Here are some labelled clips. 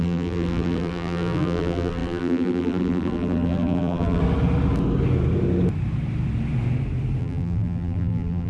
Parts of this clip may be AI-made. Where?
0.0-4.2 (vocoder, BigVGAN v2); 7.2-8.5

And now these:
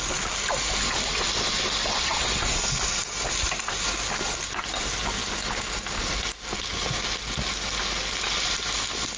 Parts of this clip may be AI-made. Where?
1.8-2.6 (vocoder, WaveNeXt)

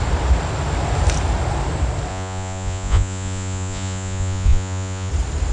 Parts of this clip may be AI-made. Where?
2.1-5.1 (vocoder, Vocos)

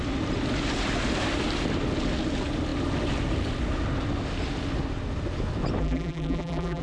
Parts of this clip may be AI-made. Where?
5.8-6.8 (vocoder, BigVGAN v2)

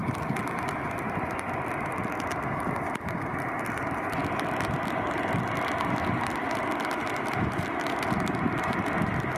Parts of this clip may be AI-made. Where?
4.2-8.1 (vocoder, BigVGAN v2)